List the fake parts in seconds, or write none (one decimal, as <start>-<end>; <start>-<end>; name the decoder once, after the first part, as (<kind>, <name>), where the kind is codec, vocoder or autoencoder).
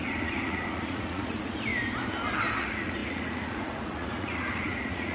0.0-1.7 (vocoder, Vocos); 2.6-5.1